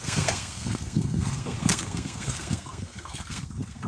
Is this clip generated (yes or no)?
yes